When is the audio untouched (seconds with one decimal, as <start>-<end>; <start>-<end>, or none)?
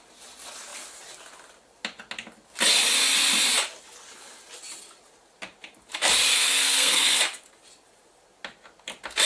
0.0-6.3; 7.2-9.2